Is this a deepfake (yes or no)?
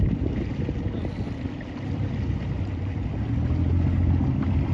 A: no